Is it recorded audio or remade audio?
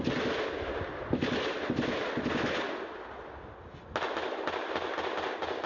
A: recorded